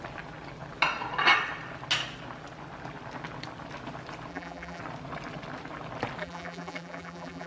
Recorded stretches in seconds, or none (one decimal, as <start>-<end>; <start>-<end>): 0.0-4.3; 4.8-6.2